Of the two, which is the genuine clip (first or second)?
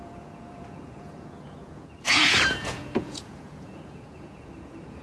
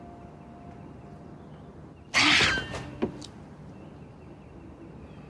second